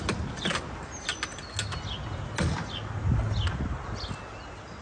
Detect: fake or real real